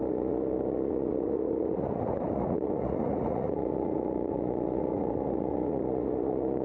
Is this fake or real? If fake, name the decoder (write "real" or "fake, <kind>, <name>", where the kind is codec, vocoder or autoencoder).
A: fake, vocoder, Vocos